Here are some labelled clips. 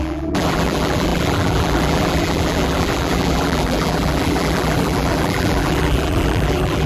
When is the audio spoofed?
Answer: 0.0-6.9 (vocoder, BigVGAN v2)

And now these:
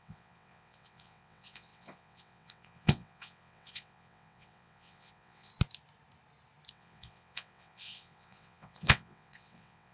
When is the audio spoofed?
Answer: 0.0-5.5 (vocoder, WaveNeXt); 6.7-9.9

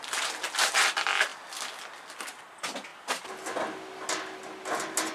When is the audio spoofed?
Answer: none